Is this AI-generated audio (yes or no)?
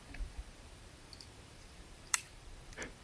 yes